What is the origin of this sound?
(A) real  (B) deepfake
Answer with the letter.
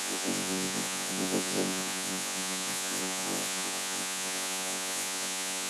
B